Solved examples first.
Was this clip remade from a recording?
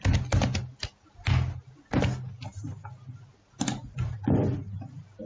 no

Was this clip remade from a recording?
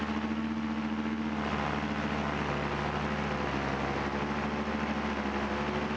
no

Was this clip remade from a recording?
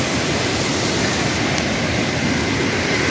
no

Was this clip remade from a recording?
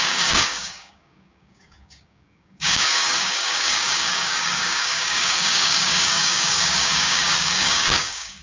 yes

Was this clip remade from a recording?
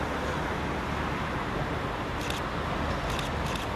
no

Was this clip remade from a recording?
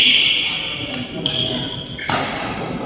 no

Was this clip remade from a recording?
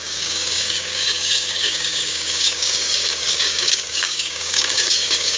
yes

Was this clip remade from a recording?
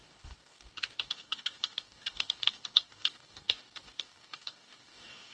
yes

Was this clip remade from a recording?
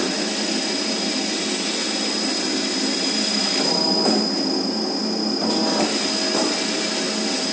no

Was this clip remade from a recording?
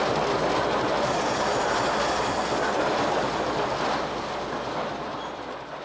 no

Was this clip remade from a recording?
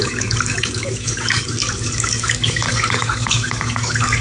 yes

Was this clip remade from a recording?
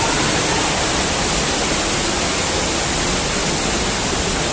no